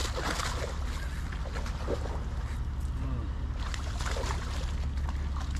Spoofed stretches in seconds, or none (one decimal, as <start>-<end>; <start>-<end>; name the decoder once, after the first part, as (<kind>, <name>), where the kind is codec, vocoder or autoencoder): none